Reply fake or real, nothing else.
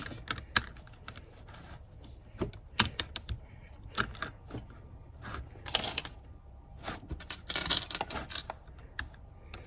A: real